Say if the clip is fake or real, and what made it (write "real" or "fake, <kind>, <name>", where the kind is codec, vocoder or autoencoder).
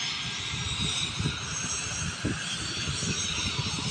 real